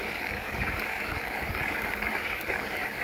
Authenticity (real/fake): fake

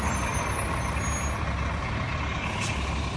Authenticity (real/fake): real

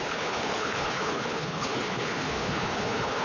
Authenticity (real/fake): fake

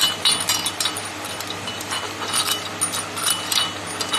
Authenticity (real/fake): real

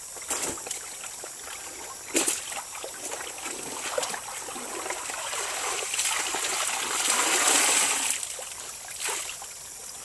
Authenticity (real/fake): real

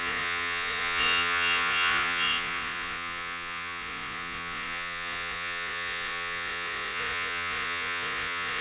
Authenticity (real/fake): fake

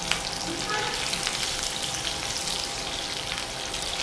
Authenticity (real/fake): fake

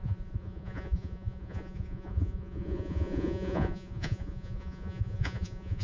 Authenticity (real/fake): fake